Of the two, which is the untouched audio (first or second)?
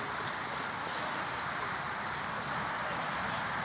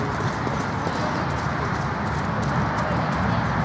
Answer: second